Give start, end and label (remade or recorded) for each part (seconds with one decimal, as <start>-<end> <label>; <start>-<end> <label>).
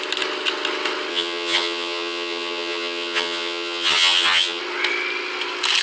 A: 0.0-1.1 recorded; 1.1-4.6 remade; 4.6-5.8 recorded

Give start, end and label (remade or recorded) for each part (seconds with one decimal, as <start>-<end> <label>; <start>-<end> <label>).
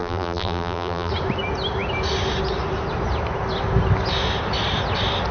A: 0.0-1.1 remade; 1.1-5.3 recorded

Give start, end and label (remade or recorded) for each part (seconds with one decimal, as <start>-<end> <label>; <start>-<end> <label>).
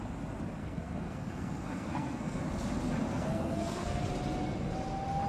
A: 0.0-0.6 recorded; 0.6-2.4 remade; 2.4-3.1 recorded; 3.1-4.0 remade; 4.0-5.3 recorded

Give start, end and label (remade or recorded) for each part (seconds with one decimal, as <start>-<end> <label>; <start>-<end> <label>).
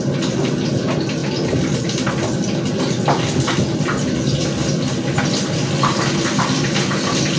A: 0.0-7.4 recorded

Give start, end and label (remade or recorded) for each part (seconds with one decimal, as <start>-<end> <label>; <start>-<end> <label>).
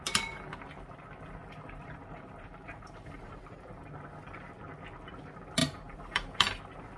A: 0.0-1.4 recorded; 1.4-3.9 remade; 3.9-5.6 recorded; 5.6-6.6 remade; 6.6-7.0 recorded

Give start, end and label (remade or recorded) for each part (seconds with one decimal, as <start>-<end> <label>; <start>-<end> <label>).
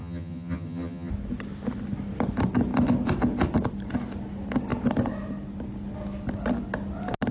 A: 0.0-1.1 remade; 1.1-7.3 recorded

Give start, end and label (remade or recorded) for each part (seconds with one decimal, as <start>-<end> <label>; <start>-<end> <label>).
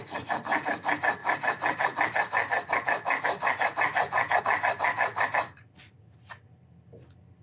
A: 0.0-7.4 recorded